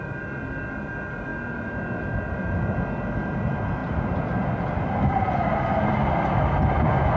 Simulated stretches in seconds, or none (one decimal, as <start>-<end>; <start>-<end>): none